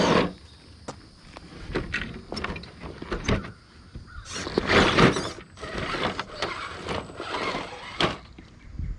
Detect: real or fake real